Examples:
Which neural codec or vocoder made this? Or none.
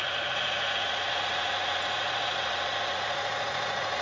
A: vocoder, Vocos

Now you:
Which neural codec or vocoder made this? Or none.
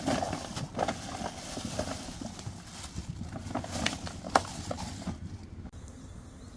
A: none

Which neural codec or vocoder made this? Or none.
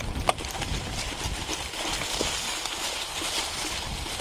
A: none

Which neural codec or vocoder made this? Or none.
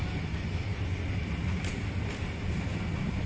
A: none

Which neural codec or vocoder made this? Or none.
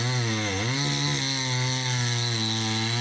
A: none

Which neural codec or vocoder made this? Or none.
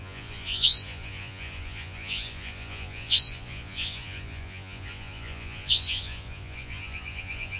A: vocoder, Vocos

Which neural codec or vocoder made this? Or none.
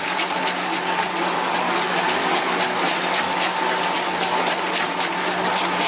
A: none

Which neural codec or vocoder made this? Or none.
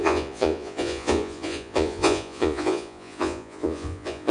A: vocoder, Vocos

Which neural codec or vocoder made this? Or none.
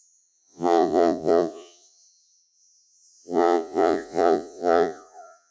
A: vocoder, Vocos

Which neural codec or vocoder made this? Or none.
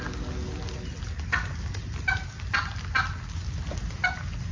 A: none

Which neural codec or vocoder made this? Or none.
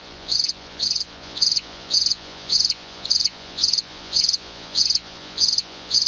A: vocoder, Vocos